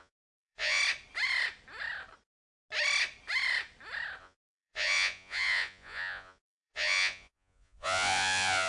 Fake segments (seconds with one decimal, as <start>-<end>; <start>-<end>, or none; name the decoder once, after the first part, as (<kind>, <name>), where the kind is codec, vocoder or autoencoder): 0.0-0.8 (vocoder, Vocos); 4.2-8.7

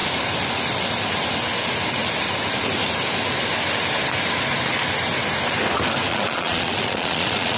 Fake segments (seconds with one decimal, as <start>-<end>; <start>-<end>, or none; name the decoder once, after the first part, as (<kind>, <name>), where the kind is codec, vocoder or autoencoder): 6.1-7.6 (vocoder, Vocos)

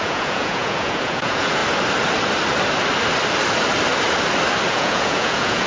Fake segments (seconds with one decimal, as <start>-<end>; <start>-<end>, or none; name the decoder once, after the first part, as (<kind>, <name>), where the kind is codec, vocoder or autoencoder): 0.0-1.6 (vocoder, Vocos); 4.7-5.7

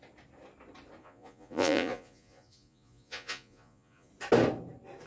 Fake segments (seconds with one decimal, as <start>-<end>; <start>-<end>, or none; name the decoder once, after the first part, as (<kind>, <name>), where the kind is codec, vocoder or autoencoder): 1.0-4.1 (vocoder, Vocos)

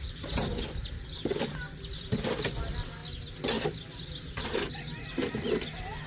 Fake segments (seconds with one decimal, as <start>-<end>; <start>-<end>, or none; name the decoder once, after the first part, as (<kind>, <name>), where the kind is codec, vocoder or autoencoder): none

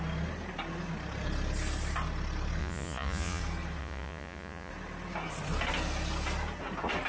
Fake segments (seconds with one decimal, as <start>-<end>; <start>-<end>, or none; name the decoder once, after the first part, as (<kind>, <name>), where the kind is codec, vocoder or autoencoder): 2.6-3.4 (vocoder, Vocos); 3.8-4.7